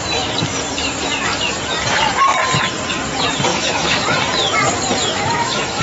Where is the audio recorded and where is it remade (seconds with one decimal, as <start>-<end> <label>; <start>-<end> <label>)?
0.0-3.5 recorded; 3.5-4.1 remade; 4.1-5.0 recorded; 5.0-5.8 remade